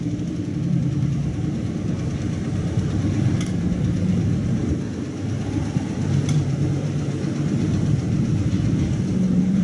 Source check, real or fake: fake